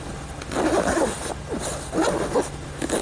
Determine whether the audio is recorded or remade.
recorded